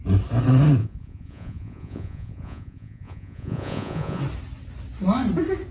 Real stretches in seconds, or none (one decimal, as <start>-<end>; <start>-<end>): 0.0-0.8; 4.2-5.7